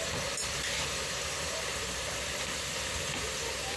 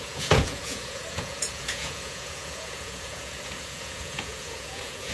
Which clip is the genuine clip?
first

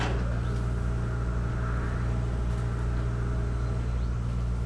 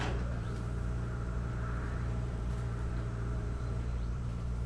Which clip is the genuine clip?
first